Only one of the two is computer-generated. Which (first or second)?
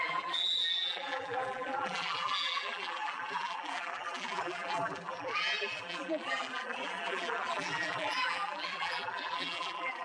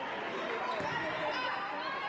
first